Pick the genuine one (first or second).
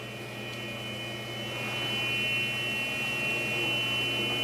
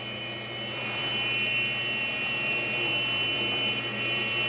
first